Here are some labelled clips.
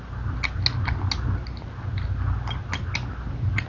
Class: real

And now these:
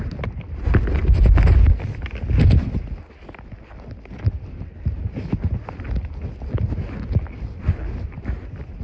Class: real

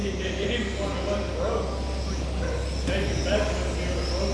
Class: real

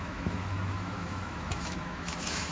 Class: fake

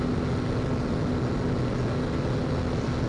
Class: real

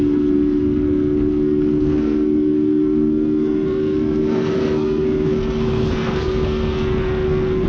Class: fake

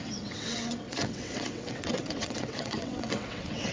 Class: fake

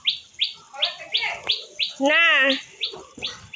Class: real